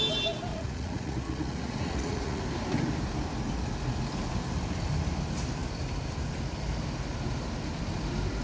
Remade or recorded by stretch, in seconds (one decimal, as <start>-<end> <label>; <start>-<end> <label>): 0.0-0.5 recorded; 0.5-2.4 remade; 2.4-8.4 recorded

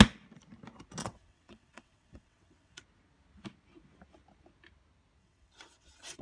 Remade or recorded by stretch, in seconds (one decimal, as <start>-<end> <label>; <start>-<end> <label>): 0.0-1.0 recorded; 1.0-2.8 remade; 2.8-5.2 recorded; 5.2-6.2 remade

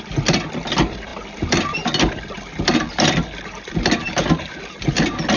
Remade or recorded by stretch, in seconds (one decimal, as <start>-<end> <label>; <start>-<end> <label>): 0.0-5.4 recorded

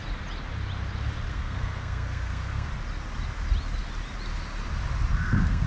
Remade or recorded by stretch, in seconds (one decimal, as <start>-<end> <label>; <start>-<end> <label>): 0.0-1.3 recorded; 1.3-2.7 remade; 2.7-5.1 recorded; 5.1-5.7 remade

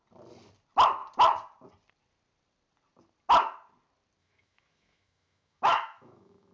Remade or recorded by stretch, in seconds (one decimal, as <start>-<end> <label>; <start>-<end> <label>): 0.0-4.2 recorded; 4.2-6.5 remade

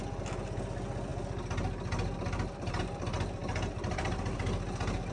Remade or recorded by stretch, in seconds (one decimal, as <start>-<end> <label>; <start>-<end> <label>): 0.0-5.1 recorded